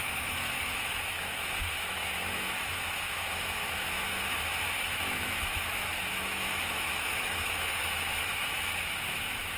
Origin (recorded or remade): remade